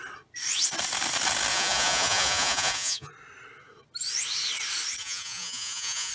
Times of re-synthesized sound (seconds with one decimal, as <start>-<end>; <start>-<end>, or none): 1.5-3.1; 5.0-6.1